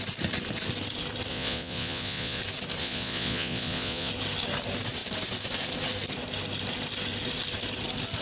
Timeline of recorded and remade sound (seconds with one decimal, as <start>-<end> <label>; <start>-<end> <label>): 0.0-1.3 recorded; 1.3-2.4 remade; 2.4-2.8 recorded; 2.8-4.1 remade; 4.1-8.2 recorded